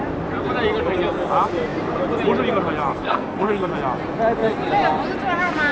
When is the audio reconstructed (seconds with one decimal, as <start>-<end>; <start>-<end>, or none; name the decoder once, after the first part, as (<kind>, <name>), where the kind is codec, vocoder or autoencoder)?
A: 2.9-3.7 (codec, SNAC)

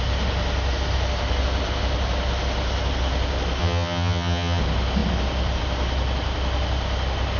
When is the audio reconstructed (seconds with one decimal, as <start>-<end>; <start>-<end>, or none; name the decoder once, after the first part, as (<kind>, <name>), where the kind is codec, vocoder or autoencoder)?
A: 3.6-4.6 (vocoder, HiFi-GAN)

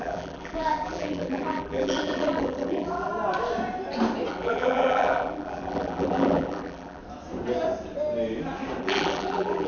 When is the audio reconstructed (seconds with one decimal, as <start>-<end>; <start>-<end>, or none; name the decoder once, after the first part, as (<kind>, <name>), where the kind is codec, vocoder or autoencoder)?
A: 0.0-3.1 (vocoder, BigVGAN v2); 4.3-7.0; 8.8-9.7

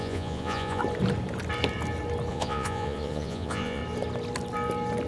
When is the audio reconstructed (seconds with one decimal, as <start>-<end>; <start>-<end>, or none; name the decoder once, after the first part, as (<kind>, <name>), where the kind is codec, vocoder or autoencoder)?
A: 0.0-0.8 (vocoder, Vocos); 2.3-3.8